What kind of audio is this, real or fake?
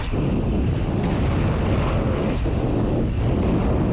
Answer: real